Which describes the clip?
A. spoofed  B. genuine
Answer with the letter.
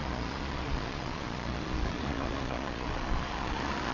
A